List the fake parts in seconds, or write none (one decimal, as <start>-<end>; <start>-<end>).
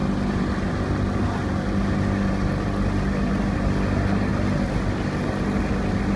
none